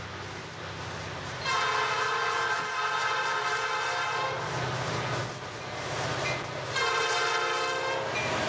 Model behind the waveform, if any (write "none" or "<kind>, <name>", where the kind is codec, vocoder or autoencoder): none